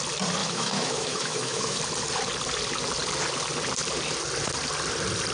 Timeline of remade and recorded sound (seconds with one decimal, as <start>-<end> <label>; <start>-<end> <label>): 0.0-0.4 recorded; 0.4-1.8 remade; 1.8-5.3 recorded